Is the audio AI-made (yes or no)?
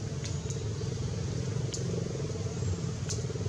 no